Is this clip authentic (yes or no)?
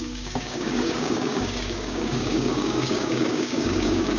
no